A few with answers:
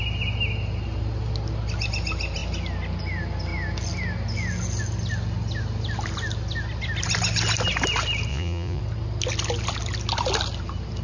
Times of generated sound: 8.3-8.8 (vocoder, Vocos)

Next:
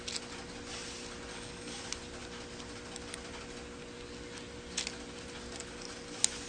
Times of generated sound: 1.3-1.8 (codec, DAC)

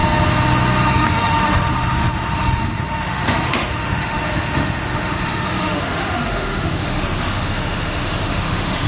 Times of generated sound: 0.9-8.9 (autoencoder, DAC-VAE)

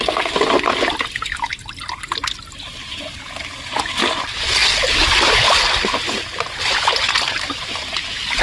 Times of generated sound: none

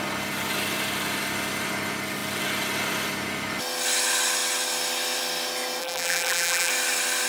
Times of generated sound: 5.8-6.7 (vocoder, BigVGAN v2)

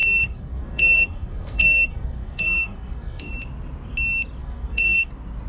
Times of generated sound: 0.0-3.3 (codec, SNAC); 4.4-5.1